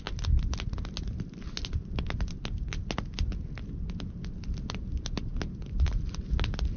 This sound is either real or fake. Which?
real